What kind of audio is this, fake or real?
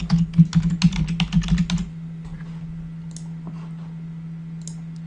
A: real